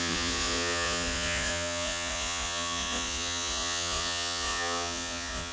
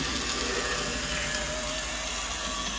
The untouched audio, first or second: second